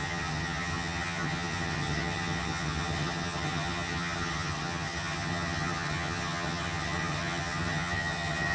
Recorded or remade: remade